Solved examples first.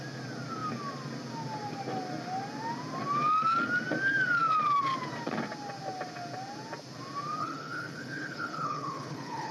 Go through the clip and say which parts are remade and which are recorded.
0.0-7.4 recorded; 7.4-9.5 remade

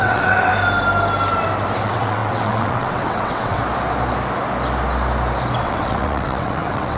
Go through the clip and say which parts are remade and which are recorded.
0.0-0.5 remade; 0.5-1.8 recorded; 1.8-3.6 remade; 3.6-5.6 recorded; 5.6-7.0 remade

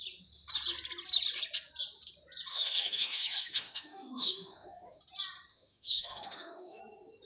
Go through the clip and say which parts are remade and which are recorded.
0.0-2.5 recorded; 2.5-5.0 remade; 5.0-5.5 recorded; 5.5-6.8 remade; 6.8-7.3 recorded